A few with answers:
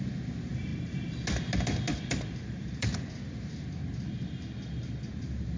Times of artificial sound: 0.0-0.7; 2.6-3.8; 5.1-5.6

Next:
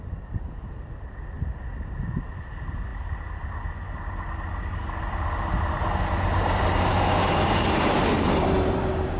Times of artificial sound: none